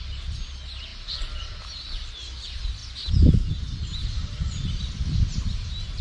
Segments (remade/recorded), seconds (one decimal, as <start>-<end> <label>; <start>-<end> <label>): 0.0-0.9 recorded; 0.9-2.1 remade; 2.1-4.0 recorded; 4.0-4.8 remade; 4.8-6.0 recorded